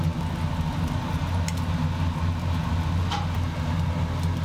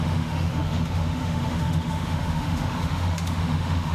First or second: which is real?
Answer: first